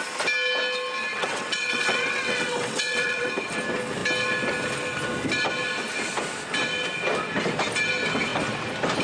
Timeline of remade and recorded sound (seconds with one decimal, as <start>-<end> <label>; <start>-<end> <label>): 0.0-1.1 recorded; 1.1-3.3 remade; 3.3-9.0 recorded